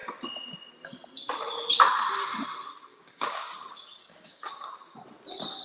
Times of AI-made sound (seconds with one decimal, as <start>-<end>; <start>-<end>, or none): 2.9-3.5; 4.0-4.7